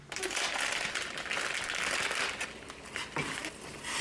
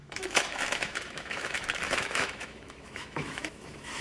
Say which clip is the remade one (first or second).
second